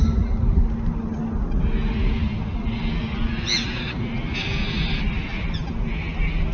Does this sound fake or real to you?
real